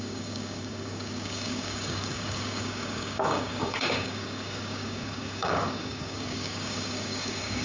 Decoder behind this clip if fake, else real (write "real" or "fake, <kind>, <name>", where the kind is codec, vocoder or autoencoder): fake, codec, DAC